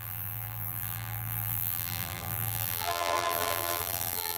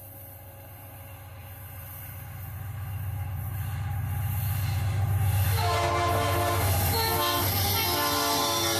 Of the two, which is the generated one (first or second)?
first